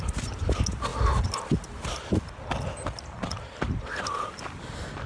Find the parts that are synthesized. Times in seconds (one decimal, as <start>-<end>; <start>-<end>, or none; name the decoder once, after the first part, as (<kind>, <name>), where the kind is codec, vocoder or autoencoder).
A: none